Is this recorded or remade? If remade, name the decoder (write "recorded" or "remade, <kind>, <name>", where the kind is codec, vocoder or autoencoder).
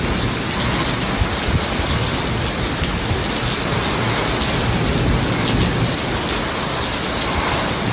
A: recorded